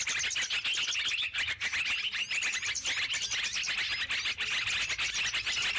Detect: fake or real real